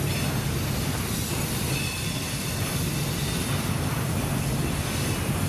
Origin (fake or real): real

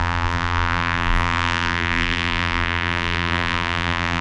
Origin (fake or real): fake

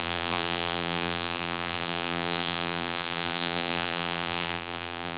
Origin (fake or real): fake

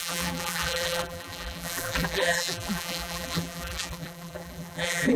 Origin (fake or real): fake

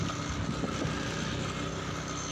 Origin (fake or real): real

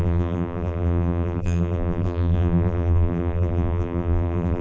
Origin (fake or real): fake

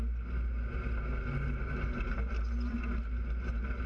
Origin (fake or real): real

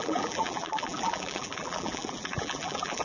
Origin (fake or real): fake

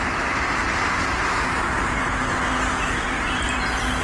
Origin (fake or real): real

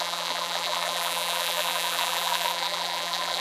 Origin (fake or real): fake